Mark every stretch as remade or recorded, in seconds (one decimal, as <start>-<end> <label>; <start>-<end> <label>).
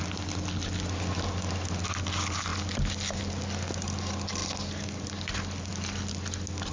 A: 0.0-4.4 recorded; 4.4-5.3 remade; 5.3-6.7 recorded